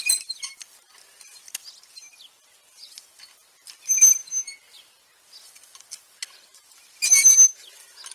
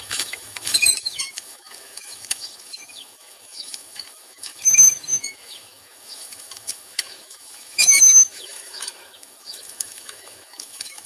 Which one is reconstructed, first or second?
second